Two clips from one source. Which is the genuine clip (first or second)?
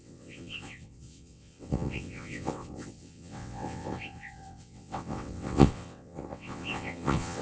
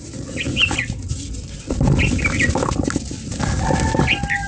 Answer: second